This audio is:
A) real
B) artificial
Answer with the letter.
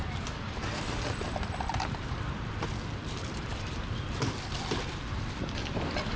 B